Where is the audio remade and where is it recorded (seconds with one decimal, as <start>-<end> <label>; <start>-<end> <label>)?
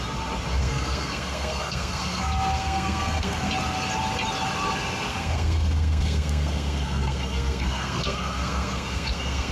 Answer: 0.0-0.6 recorded; 0.6-3.5 remade; 3.5-5.1 recorded; 5.1-9.5 remade